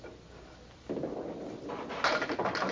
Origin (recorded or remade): recorded